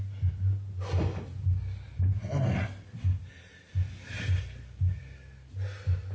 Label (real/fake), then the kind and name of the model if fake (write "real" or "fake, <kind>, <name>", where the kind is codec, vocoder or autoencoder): real